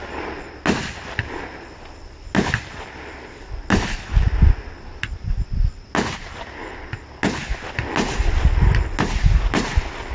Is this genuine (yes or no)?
yes